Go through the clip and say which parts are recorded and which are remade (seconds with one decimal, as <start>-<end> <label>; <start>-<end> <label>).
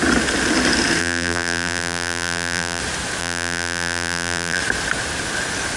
0.0-1.0 recorded; 1.0-2.8 remade; 2.8-3.2 recorded; 3.2-4.6 remade; 4.6-5.8 recorded